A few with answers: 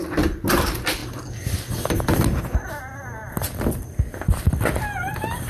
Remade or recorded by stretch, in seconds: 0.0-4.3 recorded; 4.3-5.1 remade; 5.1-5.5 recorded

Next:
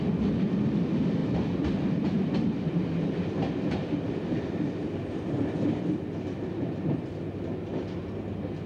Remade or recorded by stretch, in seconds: 0.0-1.2 recorded; 1.2-5.8 remade; 5.8-7.7 recorded; 7.7-8.2 remade; 8.2-8.7 recorded

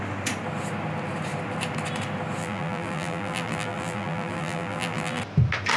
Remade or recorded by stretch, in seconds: 0.0-2.4 recorded; 2.4-5.2 remade; 5.2-5.8 recorded

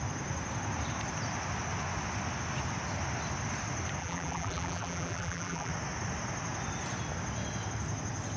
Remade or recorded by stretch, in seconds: 0.0-4.0 recorded; 4.0-5.7 remade; 5.7-8.4 recorded

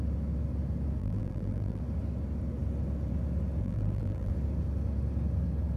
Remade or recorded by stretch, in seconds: 0.0-1.0 recorded; 1.0-1.8 remade; 1.8-3.6 recorded; 3.6-4.3 remade; 4.3-5.8 recorded

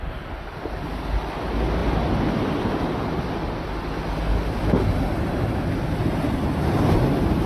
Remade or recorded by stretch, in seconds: 0.0-7.5 recorded